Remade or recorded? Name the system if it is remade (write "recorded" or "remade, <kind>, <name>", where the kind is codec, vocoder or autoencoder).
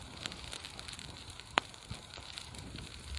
remade, vocoder, BigVGAN v2